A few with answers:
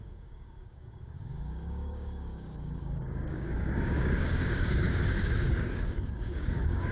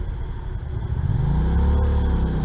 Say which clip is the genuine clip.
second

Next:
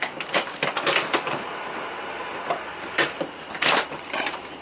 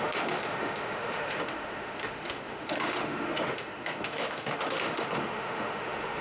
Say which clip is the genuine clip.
first